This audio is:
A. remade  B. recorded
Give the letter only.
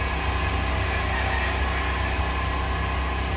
B